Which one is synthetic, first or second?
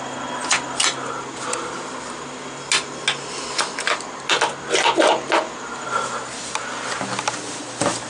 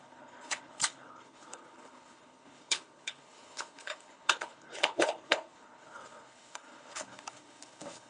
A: second